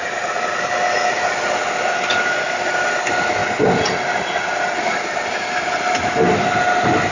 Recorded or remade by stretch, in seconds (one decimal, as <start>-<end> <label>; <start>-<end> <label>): 0.0-7.1 recorded

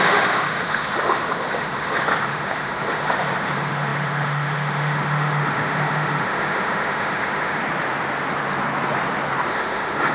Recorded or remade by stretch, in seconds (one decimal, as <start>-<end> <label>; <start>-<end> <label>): 0.0-7.6 remade; 7.6-9.5 recorded; 9.5-10.1 remade

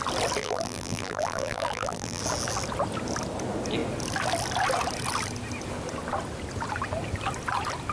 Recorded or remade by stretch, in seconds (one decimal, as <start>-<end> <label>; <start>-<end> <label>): 0.0-0.4 recorded; 0.4-2.2 remade; 2.2-7.9 recorded

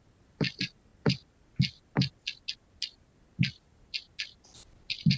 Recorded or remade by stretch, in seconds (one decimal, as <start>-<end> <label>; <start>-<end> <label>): 0.0-5.2 recorded

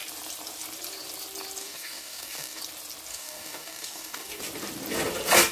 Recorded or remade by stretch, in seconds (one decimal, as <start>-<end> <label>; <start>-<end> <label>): 0.0-1.6 recorded; 1.6-2.6 remade; 2.6-3.1 recorded; 3.1-4.4 remade; 4.4-5.5 recorded

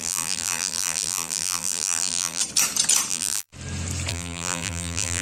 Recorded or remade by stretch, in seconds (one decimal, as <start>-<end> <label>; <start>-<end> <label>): 0.0-2.4 remade; 2.4-3.1 recorded; 3.1-3.5 remade; 3.5-4.1 recorded; 4.1-5.2 remade

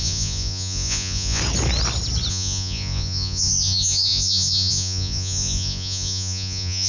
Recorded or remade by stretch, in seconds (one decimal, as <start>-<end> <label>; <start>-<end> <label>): 0.0-1.4 remade; 1.4-2.3 recorded; 2.3-6.9 remade